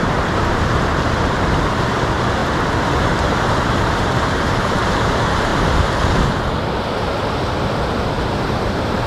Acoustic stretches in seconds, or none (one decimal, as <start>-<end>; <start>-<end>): 2.4-3.1; 5.5-7.9